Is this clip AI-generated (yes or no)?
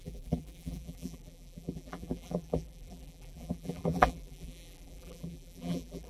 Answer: yes